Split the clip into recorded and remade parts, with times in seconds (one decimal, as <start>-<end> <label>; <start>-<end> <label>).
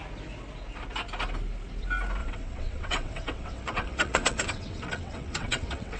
0.0-2.2 recorded; 2.2-6.0 remade